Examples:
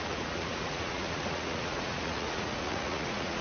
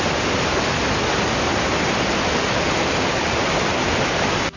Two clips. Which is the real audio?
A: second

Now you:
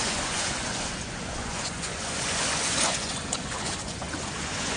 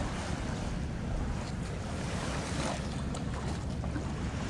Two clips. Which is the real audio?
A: second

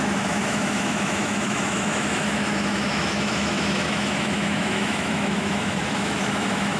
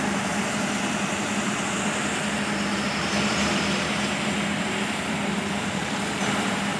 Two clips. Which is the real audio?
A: second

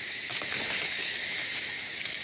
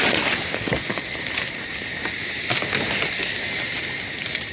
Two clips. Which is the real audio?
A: second